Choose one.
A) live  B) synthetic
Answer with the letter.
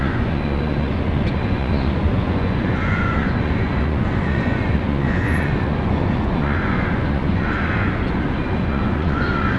B